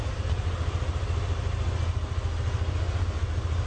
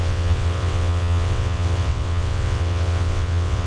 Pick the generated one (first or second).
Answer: second